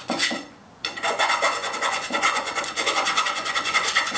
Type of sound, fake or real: fake